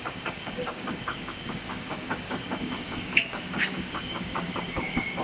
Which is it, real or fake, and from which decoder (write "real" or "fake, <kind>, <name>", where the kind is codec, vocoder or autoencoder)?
fake, codec, DAC